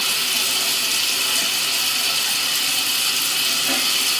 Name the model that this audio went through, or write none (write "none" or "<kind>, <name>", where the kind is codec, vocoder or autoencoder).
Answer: none